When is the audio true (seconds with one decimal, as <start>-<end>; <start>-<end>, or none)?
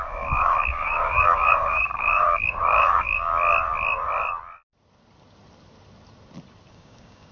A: 3.3-6.7